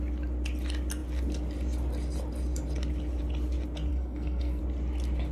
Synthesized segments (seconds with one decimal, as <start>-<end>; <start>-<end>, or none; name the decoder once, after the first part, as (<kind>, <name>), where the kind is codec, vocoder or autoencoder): 3.9-4.6 (codec, SNAC)